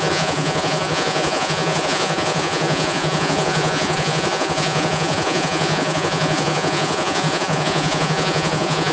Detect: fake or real fake